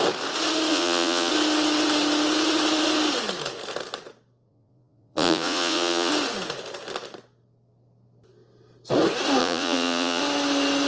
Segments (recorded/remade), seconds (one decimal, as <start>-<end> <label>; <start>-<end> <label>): 0.0-0.7 recorded; 0.7-1.3 remade; 1.3-4.5 recorded; 4.5-6.1 remade; 6.1-9.4 recorded; 9.4-10.2 remade; 10.2-10.9 recorded